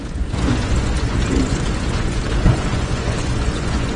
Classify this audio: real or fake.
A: fake